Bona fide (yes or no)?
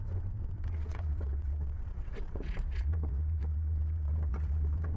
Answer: no